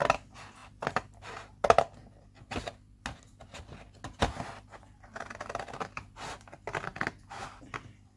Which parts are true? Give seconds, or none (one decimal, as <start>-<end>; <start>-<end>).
0.0-8.2